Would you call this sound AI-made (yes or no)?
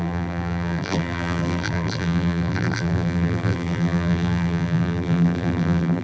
yes